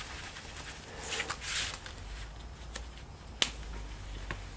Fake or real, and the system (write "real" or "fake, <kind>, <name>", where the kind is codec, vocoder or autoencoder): real